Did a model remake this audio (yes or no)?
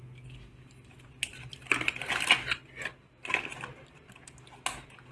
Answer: no